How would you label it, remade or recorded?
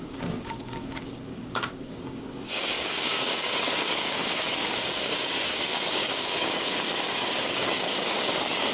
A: remade